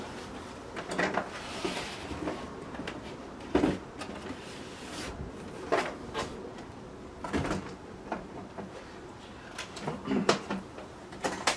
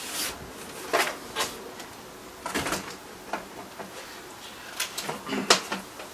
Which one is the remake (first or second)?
first